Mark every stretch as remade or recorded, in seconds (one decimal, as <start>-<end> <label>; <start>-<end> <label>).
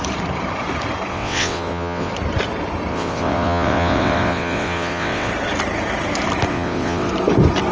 0.0-1.1 recorded; 1.1-2.1 remade; 2.1-2.9 recorded; 2.9-5.3 remade; 5.3-6.5 recorded; 6.5-7.1 remade; 7.1-7.7 recorded